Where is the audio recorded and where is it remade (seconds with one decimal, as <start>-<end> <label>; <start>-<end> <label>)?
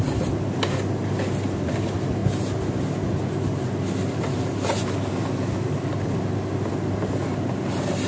0.0-8.1 recorded